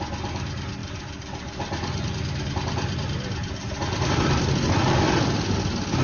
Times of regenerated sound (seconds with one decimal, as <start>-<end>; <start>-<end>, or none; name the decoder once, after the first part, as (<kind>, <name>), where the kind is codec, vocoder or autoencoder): none